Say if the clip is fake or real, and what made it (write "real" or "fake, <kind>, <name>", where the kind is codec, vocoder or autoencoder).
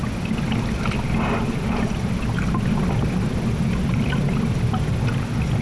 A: real